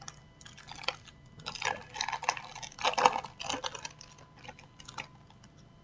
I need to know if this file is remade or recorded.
recorded